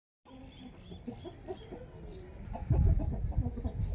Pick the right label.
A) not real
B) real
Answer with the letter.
B